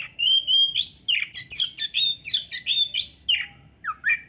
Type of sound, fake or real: real